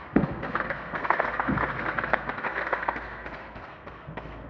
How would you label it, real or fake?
fake